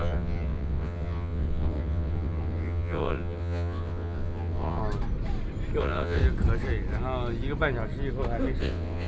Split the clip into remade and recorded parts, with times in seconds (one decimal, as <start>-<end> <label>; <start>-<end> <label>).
0.0-4.8 remade; 4.8-5.8 recorded; 5.8-6.2 remade; 6.2-8.6 recorded; 8.6-9.1 remade